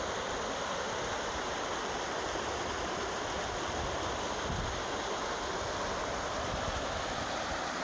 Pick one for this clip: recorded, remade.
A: recorded